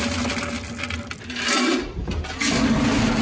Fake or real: real